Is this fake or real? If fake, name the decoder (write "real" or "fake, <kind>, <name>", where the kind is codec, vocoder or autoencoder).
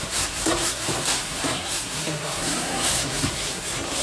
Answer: fake, codec, SNAC